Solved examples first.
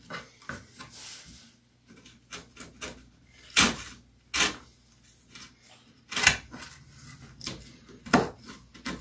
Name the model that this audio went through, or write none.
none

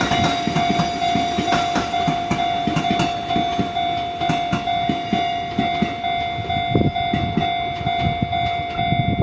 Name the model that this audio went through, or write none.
none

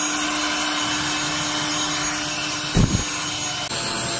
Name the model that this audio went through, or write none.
none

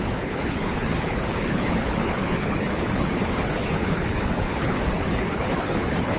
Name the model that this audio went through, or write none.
codec, HILCodec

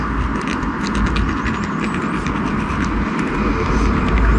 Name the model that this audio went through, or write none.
none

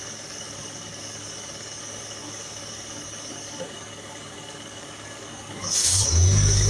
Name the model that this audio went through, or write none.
codec, DAC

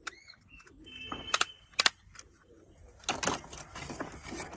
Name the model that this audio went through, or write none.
none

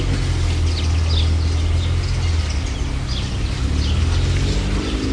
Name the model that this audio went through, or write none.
none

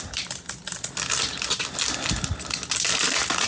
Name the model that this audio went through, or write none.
vocoder, BigVGAN v2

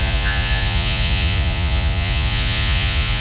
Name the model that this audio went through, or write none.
vocoder, Vocos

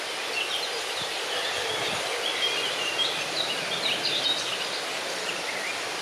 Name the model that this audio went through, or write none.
none